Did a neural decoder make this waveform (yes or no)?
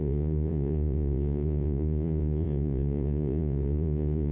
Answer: yes